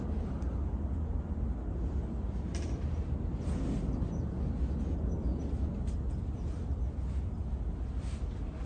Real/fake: real